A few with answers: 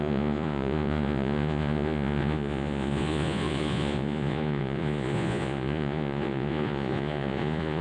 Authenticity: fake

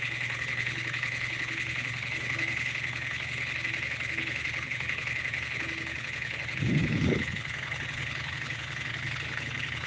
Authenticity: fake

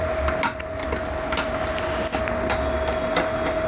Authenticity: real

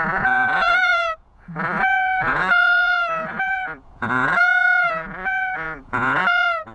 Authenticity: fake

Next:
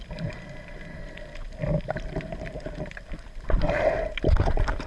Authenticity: real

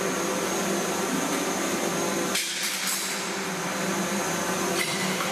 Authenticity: fake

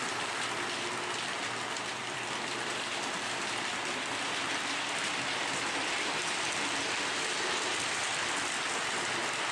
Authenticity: real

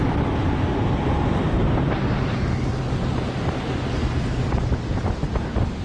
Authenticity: real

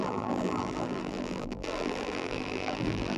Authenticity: fake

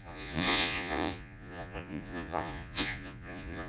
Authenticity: fake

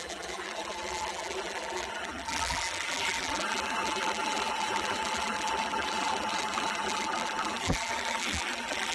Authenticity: fake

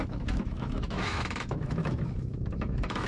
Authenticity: fake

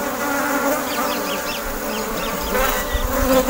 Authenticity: real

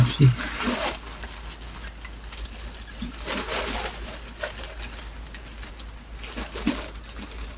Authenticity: real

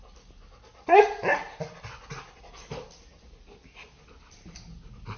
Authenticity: real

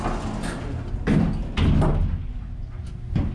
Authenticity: real